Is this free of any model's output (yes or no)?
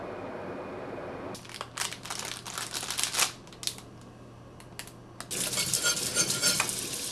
yes